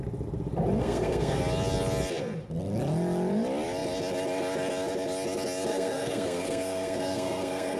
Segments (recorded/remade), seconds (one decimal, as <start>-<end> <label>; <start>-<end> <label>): 0.0-0.8 recorded; 0.8-1.4 remade; 1.4-5.7 recorded; 5.7-7.8 remade